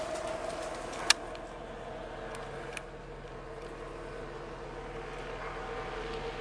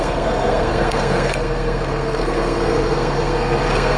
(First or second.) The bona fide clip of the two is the first